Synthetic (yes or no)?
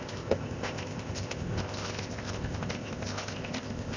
yes